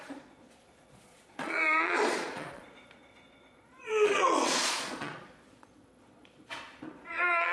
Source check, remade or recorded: remade